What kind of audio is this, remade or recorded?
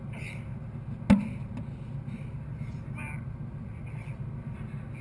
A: recorded